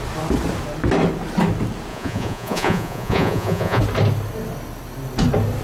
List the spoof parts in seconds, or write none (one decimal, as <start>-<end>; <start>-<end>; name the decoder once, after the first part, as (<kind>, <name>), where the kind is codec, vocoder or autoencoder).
1.9-3.8 (vocoder, Vocos)